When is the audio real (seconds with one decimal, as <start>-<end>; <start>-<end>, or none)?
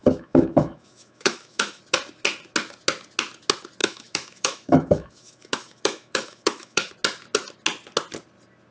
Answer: 1.8-3.8; 6.9-8.7